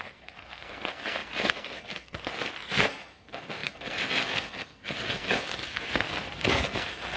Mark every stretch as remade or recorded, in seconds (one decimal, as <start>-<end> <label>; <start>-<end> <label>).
0.0-7.2 remade